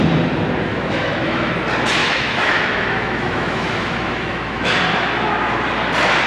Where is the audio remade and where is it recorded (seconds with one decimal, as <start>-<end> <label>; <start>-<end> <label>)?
0.0-0.7 recorded; 0.7-1.5 remade; 1.5-2.0 recorded; 2.0-4.7 remade; 4.7-6.3 recorded